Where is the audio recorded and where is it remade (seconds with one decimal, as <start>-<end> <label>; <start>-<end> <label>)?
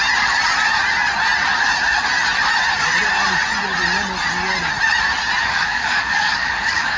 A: 0.0-5.4 recorded; 5.4-7.0 remade